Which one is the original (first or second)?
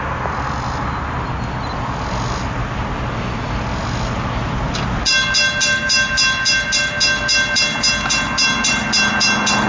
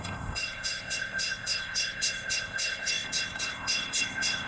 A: first